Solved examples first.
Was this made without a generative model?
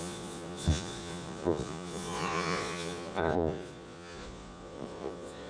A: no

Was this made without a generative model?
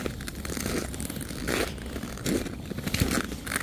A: yes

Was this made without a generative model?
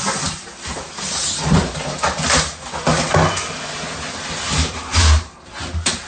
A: yes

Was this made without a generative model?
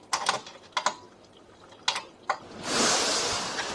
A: yes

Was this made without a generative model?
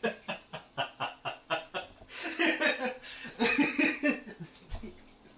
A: yes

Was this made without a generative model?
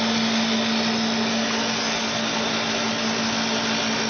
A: yes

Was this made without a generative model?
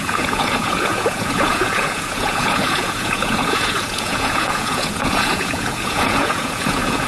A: no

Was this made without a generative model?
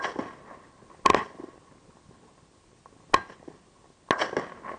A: yes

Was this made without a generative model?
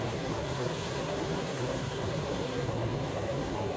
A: no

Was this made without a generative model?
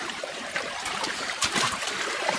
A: no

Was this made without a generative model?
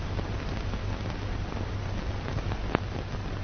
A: yes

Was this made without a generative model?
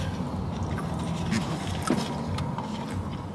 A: yes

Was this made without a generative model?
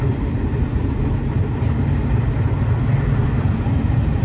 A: yes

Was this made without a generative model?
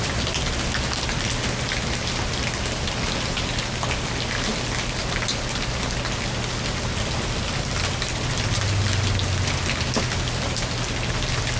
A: yes